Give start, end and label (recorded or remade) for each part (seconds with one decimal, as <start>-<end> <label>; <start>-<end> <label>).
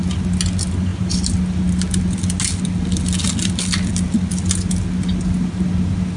0.0-3.2 recorded; 3.2-3.9 remade; 3.9-6.2 recorded